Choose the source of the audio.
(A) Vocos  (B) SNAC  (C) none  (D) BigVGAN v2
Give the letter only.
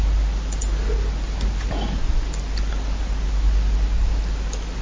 C